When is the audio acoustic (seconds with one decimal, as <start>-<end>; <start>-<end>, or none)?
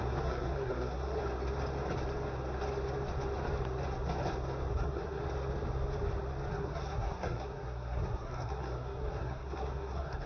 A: 1.2-4.7; 5.2-6.5